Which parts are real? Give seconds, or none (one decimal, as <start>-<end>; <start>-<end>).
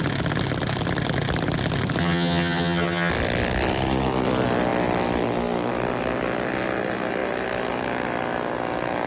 0.0-2.0; 3.1-9.1